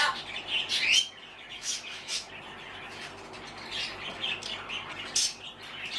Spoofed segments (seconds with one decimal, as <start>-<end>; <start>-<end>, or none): 1.3-2.3